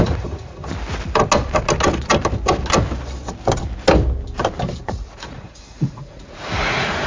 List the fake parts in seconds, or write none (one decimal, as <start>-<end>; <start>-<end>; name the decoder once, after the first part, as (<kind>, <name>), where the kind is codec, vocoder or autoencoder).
0.0-0.6 (vocoder, Vocos); 4.8-7.1